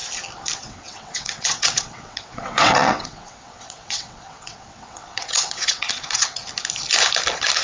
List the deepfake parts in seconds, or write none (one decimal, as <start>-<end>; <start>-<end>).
0.6-6.4